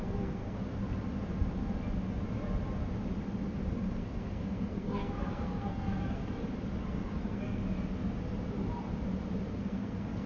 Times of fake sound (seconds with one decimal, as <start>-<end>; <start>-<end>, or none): 0.0-0.6; 3.7-6.2; 6.8-7.6; 9.5-10.3